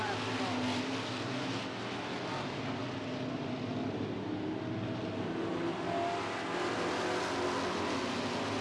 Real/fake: real